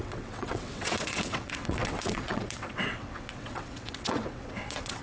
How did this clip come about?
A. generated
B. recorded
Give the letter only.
A